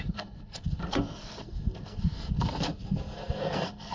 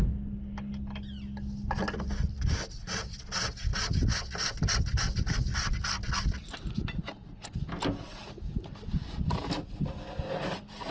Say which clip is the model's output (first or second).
first